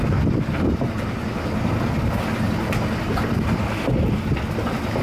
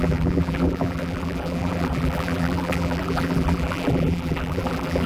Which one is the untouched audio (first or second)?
first